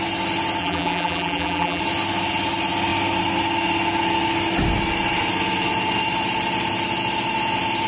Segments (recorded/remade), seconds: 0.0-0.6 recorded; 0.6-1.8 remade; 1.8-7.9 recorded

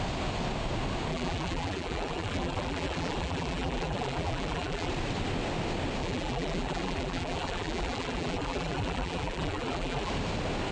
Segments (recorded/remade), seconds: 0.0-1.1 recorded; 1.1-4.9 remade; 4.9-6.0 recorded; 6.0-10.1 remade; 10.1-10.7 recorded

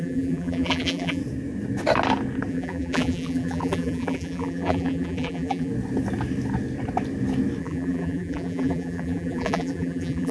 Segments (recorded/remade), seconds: 0.0-1.2 remade; 1.2-2.5 recorded; 2.5-5.7 remade; 5.7-7.6 recorded; 7.6-10.3 remade

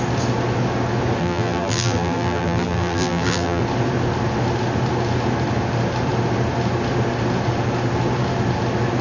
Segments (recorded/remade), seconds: 0.0-1.2 recorded; 1.2-3.6 remade; 3.6-9.0 recorded

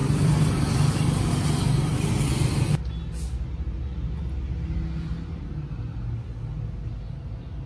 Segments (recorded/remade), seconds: 0.0-1.3 remade; 1.3-7.7 recorded